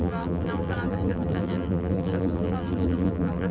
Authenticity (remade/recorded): remade